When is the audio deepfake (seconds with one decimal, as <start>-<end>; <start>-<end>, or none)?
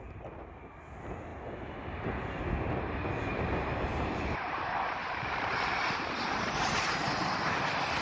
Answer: 3.3-7.2